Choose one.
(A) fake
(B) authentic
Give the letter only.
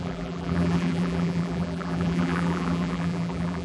A